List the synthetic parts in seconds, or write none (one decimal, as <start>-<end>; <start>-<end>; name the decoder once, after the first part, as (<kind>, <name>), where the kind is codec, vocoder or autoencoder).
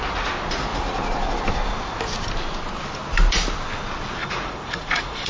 4.2-5.3 (vocoder, Vocos)